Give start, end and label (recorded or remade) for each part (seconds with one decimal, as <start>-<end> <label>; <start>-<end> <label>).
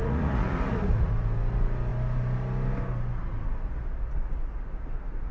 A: 0.0-1.1 remade; 1.1-5.3 recorded